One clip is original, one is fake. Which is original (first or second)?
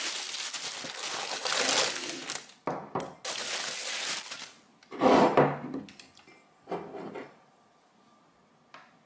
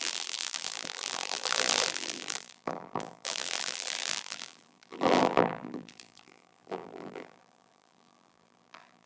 first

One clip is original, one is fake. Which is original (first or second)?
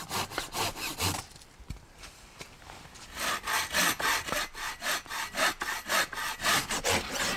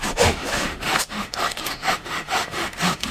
first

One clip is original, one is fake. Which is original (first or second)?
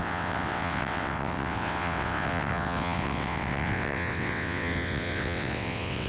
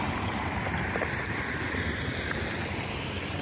second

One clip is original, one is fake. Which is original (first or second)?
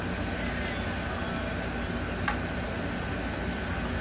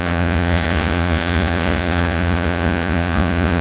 first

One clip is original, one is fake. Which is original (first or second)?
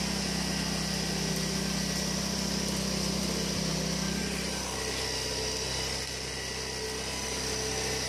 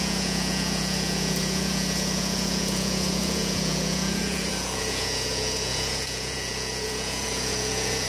first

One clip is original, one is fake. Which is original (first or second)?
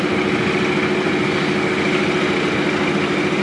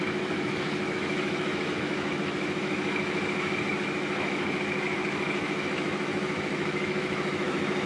first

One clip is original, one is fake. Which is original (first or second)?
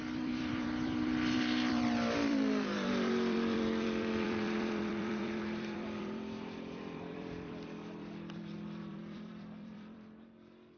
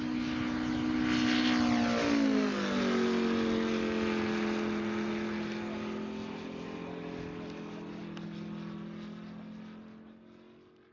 second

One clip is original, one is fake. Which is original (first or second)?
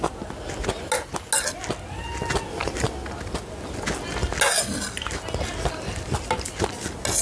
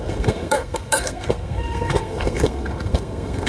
first